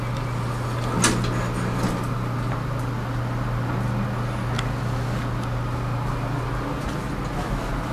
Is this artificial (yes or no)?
no